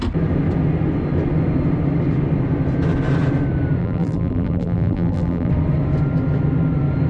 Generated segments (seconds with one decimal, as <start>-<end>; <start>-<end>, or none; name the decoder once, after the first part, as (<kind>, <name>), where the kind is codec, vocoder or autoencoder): 3.8-5.5 (vocoder, BigVGAN v2)